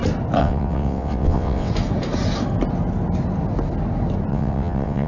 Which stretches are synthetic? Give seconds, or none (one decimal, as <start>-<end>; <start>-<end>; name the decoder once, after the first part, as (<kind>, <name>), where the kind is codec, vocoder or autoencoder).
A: 0.4-1.7 (vocoder, WaveNeXt); 4.3-5.1